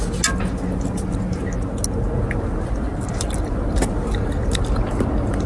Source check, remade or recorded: recorded